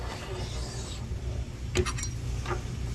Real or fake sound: real